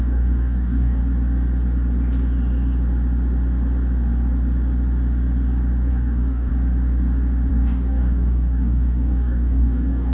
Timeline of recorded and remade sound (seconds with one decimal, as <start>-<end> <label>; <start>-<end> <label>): 0.0-1.0 remade; 1.0-5.9 recorded; 5.9-6.5 remade; 6.5-7.5 recorded; 7.5-10.1 remade